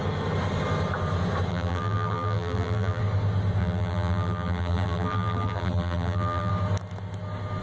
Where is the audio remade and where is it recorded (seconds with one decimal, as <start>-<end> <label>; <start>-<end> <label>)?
0.0-1.5 recorded; 1.5-3.0 remade; 3.0-3.6 recorded; 3.6-6.5 remade; 6.5-7.6 recorded